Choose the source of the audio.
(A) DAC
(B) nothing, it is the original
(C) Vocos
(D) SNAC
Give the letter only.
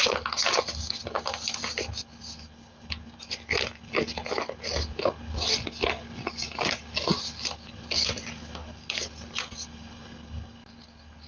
B